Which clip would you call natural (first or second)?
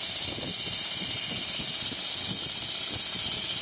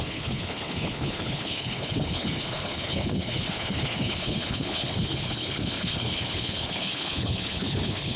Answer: first